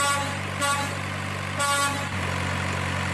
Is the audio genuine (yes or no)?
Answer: yes